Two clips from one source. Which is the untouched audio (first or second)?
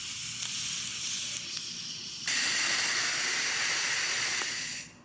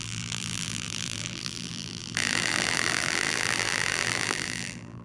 first